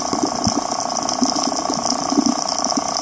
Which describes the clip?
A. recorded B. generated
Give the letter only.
A